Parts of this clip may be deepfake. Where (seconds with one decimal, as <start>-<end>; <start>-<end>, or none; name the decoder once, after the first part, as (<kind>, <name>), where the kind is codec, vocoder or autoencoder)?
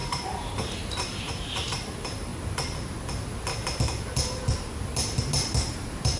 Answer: 0.0-2.3 (vocoder, BigVGAN v2); 5.2-6.2